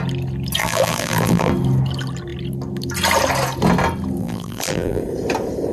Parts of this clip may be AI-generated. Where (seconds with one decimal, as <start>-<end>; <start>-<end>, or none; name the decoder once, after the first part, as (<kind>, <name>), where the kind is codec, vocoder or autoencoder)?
0.6-1.5 (vocoder, BigVGAN v2); 4.2-5.0